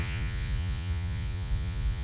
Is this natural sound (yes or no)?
no